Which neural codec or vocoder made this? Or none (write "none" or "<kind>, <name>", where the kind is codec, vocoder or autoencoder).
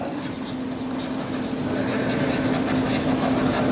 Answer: none